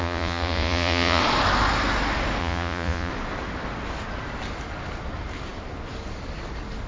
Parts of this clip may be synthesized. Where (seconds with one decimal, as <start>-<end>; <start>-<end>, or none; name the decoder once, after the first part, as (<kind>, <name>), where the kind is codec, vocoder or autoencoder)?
0.0-1.2 (vocoder, Vocos); 2.4-3.1